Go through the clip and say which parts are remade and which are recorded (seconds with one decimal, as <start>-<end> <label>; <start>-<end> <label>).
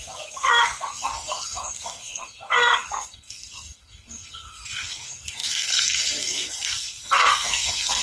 0.0-8.0 remade